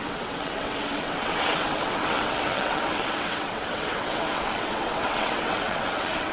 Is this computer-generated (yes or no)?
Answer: yes